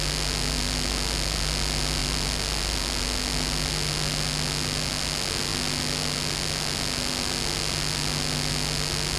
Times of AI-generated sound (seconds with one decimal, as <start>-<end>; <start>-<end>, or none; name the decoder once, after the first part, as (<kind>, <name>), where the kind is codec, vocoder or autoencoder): none